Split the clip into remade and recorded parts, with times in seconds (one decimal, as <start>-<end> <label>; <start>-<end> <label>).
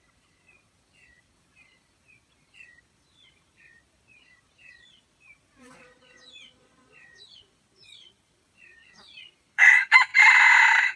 0.0-10.1 remade; 10.1-11.0 recorded